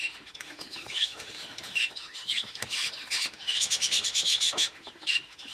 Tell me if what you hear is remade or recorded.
remade